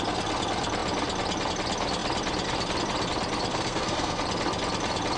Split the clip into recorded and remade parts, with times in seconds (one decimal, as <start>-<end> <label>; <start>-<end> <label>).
0.0-3.5 recorded; 3.5-4.2 remade; 4.2-5.2 recorded